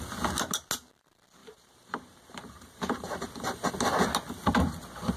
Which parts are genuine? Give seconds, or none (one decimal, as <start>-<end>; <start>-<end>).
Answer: 0.0-1.4; 3.7-5.2